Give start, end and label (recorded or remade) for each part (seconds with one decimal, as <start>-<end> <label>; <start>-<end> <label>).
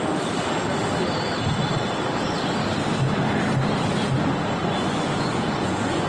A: 0.0-4.6 recorded; 4.6-6.1 remade